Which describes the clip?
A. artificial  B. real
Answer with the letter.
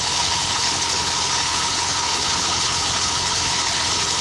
A